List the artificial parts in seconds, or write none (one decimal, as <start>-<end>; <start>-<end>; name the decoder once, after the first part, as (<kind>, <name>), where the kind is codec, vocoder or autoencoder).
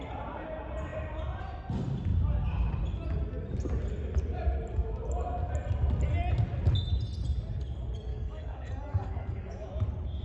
8.1-9.7 (codec, DAC)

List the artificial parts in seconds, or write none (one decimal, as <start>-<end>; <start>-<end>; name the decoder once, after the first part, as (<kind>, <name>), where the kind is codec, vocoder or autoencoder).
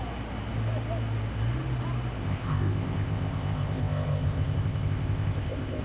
2.2-5.8 (codec, ZipCodec)